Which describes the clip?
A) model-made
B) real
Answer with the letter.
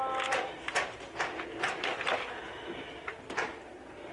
B